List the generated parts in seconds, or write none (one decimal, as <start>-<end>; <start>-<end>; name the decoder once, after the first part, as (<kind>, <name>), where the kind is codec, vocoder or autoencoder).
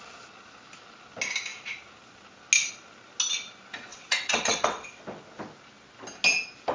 3.9-5.0 (vocoder, WaveNeXt)